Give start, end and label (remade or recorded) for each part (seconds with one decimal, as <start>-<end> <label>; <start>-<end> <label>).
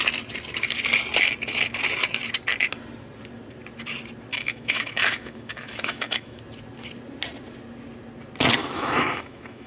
0.0-4.3 recorded; 4.3-6.4 remade; 6.4-8.6 recorded; 8.6-9.7 remade